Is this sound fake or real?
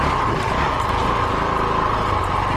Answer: real